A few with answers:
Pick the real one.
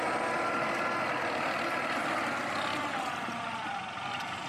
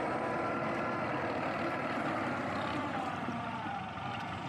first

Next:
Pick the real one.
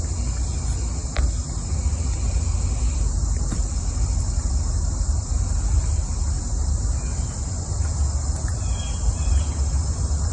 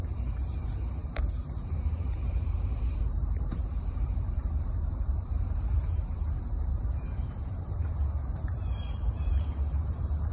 first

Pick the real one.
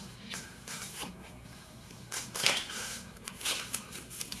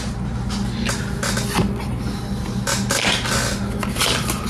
second